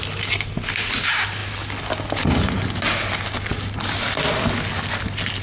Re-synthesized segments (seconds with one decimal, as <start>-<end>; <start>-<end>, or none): none